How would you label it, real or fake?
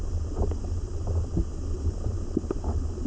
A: real